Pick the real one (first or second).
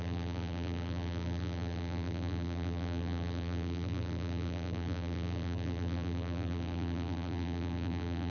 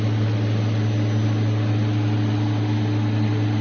second